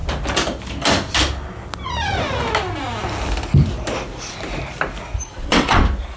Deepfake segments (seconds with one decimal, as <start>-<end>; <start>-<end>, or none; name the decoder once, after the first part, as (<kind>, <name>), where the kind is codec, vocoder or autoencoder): 5.3-5.8 (vocoder, WaveNeXt)